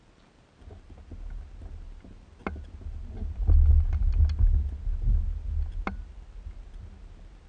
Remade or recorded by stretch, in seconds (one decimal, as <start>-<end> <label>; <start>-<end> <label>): 0.0-7.5 recorded